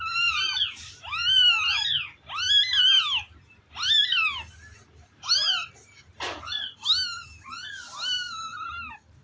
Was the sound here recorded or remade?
recorded